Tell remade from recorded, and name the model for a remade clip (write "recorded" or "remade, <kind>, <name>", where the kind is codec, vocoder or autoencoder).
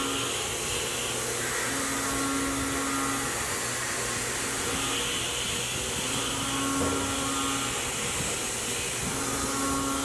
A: recorded